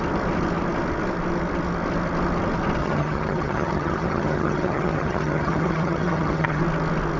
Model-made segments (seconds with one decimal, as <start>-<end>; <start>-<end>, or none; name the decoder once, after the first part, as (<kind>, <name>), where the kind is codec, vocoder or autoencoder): 2.8-6.6 (vocoder, HiFi-GAN)